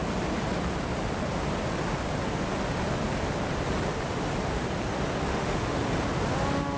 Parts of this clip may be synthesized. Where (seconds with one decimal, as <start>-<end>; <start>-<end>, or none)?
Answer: 5.3-5.8